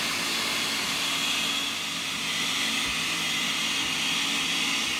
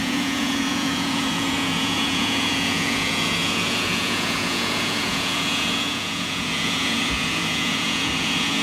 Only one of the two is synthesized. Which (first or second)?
second